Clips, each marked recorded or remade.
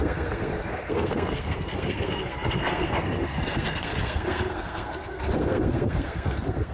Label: remade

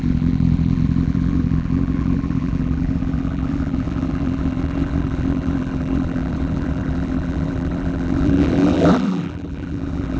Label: remade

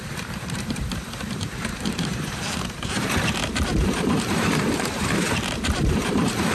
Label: remade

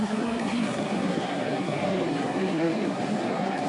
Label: remade